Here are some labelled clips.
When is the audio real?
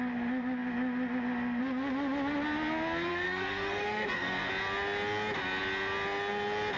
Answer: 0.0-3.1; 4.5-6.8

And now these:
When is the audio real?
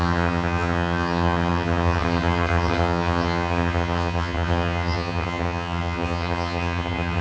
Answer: none